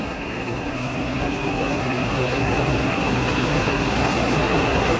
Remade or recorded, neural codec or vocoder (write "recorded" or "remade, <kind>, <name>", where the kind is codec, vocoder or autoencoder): remade, codec, SNAC